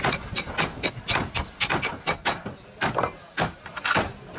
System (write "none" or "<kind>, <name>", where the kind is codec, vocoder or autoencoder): none